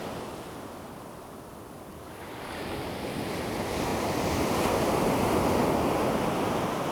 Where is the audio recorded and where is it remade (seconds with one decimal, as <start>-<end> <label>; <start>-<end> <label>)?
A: 0.0-1.9 recorded; 1.9-3.0 remade; 3.0-6.9 recorded